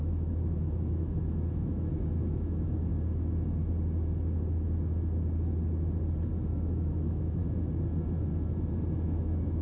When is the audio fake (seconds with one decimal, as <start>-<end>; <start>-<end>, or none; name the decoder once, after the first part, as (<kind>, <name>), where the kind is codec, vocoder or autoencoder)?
0.0-2.9 (autoencoder, DAC-VAE); 6.3-7.4; 8.9-9.6